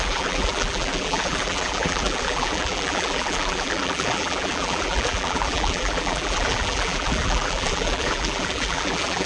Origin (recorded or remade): remade